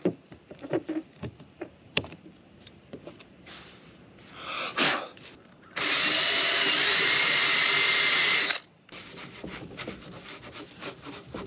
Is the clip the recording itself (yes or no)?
no